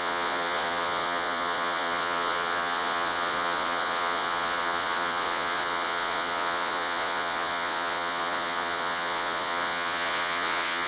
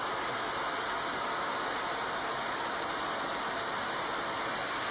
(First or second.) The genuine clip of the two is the second